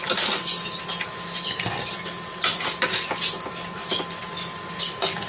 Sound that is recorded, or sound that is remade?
recorded